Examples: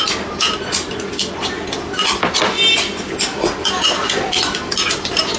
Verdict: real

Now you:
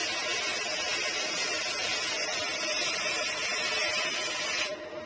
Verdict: real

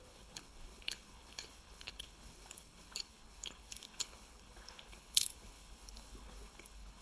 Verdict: fake